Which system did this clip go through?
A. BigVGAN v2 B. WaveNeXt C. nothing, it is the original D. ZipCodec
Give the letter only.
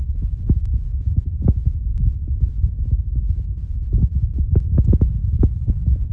C